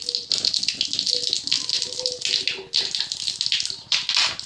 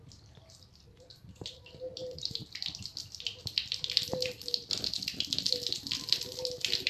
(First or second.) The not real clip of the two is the second